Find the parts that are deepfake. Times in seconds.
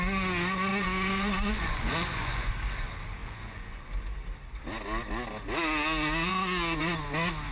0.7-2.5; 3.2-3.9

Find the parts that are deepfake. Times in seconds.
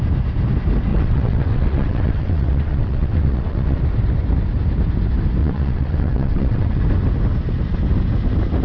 0.9-3.8; 5.4-6.8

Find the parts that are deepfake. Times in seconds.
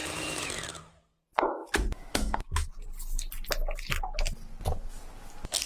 0.0-0.8; 1.6-2.7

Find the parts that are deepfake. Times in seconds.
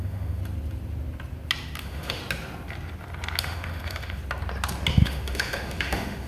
0.0-0.4; 1.8-2.2; 3.4-4.2; 4.9-6.3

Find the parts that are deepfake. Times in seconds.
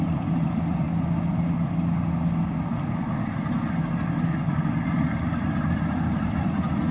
none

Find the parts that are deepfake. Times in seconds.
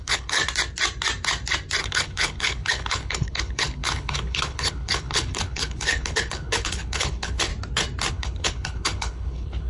0.0-0.4; 1.8-7.5; 8.1-9.7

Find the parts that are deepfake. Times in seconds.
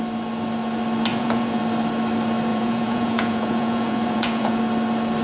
1.1-1.6; 2.5-4.6